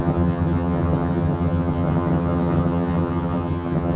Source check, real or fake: fake